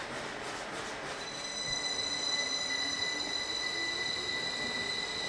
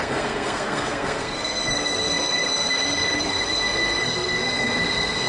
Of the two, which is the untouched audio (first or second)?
first